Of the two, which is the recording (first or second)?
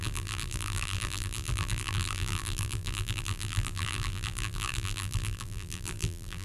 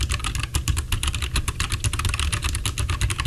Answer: second